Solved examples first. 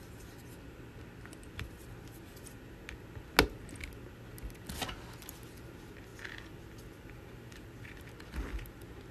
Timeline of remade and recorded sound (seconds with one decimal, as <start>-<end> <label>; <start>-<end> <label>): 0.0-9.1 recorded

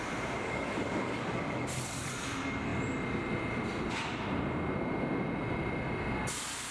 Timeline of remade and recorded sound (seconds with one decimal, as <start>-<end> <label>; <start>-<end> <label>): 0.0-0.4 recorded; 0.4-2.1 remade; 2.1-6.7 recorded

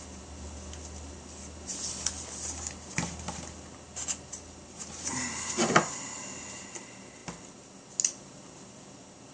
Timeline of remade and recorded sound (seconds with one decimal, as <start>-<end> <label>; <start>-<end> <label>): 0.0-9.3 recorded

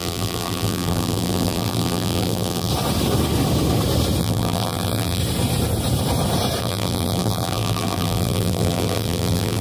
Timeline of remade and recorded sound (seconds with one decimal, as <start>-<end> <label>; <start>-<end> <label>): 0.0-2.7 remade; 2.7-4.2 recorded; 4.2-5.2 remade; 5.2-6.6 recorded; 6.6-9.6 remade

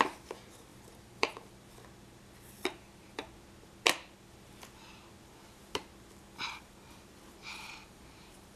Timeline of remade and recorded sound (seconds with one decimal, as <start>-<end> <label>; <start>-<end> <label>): 0.0-0.7 recorded; 0.7-1.7 remade; 1.7-2.6 recorded; 2.6-3.2 remade; 3.2-7.8 recorded; 7.8-8.6 remade

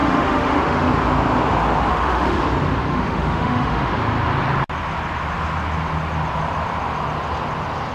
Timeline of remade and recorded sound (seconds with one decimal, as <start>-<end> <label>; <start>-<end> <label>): 0.0-0.9 remade; 0.9-1.9 recorded; 1.9-2.4 remade; 2.4-2.9 recorded; 2.9-3.9 remade; 3.9-7.9 recorded

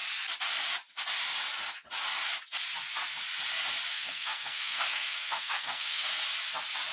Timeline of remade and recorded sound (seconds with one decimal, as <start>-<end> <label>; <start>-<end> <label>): 0.0-3.9 recorded; 3.9-6.1 remade; 6.1-6.9 recorded

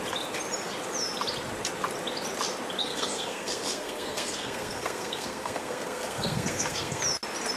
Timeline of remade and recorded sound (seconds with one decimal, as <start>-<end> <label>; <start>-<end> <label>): 0.0-2.8 recorded; 2.8-7.0 remade; 7.0-7.6 recorded